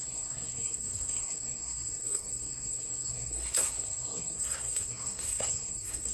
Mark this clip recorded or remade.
remade